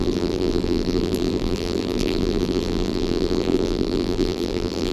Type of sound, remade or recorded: remade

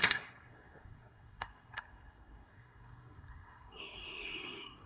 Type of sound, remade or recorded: remade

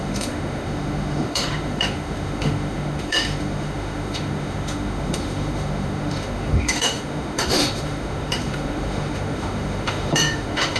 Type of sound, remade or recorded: remade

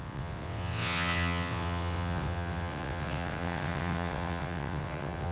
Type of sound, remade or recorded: remade